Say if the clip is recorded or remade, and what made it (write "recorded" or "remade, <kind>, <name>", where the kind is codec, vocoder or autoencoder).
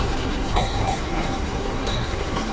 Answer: remade, codec, SNAC